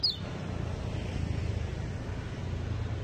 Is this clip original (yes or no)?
yes